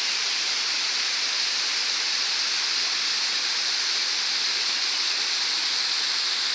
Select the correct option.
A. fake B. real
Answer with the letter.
B